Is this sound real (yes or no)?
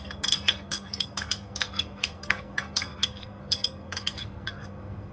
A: no